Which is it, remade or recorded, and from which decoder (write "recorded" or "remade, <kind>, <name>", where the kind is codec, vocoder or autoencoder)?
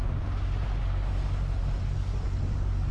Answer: recorded